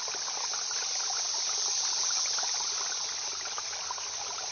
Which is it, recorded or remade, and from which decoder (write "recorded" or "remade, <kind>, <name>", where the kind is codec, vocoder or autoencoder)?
recorded